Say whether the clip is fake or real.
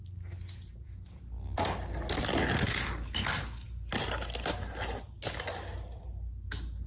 real